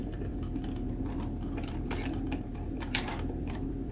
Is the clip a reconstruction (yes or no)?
yes